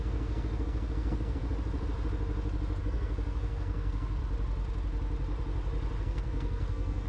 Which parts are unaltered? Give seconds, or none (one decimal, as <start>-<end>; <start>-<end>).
1.4-2.8; 4.2-6.0